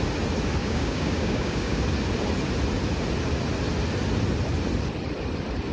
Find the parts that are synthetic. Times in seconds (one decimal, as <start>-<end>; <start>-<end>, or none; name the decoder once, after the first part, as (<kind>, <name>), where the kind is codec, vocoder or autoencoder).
0.6-1.8 (codec, DAC)